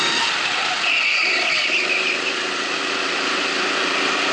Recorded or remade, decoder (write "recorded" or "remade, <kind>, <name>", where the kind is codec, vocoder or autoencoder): recorded